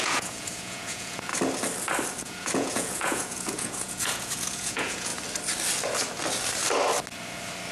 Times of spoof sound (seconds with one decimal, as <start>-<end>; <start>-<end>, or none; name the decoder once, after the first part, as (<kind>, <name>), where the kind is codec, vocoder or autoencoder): 0.0-1.3 (vocoder, Vocos); 2.2-5.1